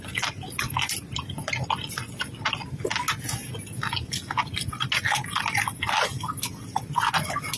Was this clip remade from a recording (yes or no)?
no